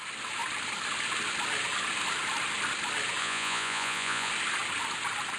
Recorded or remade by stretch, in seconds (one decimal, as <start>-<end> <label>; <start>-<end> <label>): 0.0-3.2 recorded; 3.2-4.3 remade; 4.3-5.4 recorded